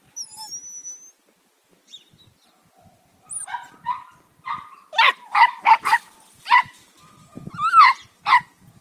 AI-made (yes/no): no